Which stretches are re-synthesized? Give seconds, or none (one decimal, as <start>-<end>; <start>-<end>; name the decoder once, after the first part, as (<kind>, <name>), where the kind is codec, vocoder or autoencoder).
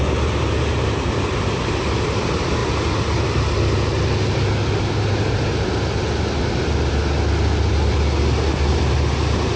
none